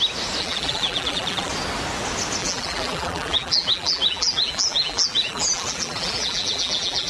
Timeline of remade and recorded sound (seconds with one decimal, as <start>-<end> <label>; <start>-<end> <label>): 0.0-0.4 recorded; 0.4-1.5 remade; 1.5-2.4 recorded; 2.4-7.1 remade